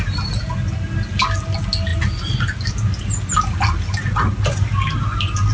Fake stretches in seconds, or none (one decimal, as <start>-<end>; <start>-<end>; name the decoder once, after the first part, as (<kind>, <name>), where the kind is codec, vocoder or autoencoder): none